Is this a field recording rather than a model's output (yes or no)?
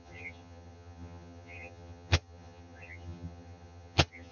no